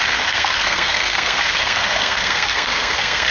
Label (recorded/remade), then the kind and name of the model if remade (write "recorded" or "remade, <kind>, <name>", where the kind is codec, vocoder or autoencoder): remade, codec, SNAC